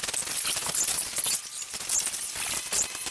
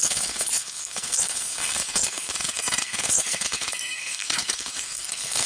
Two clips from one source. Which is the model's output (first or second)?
second